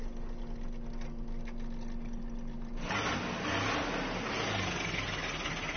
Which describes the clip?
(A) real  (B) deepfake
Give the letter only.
A